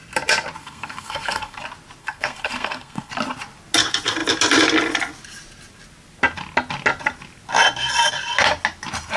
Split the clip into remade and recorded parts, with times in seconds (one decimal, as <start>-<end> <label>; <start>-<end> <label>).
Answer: 0.0-0.6 recorded; 0.6-1.6 remade; 1.6-2.0 recorded; 2.0-3.1 remade; 3.1-9.2 recorded